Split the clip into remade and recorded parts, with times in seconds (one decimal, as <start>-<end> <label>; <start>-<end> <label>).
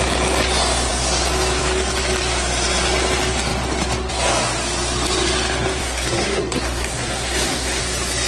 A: 0.0-5.8 recorded; 5.8-7.8 remade; 7.8-8.3 recorded